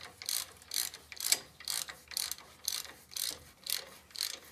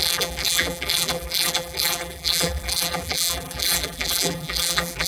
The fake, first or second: second